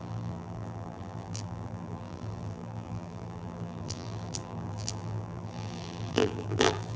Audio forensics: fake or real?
fake